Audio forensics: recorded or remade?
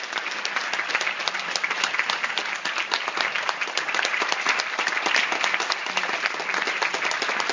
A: recorded